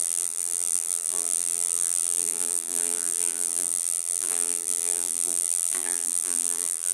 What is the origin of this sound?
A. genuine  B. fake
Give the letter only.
B